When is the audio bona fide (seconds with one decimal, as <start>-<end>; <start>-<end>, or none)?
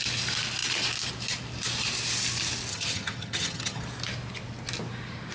0.0-2.7; 3.8-5.3